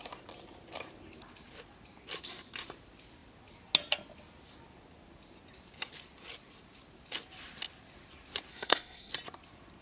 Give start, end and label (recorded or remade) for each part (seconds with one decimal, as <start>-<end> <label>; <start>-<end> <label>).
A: 0.0-8.5 recorded; 8.5-9.1 remade; 9.1-9.8 recorded